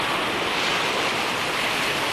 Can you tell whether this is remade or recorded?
recorded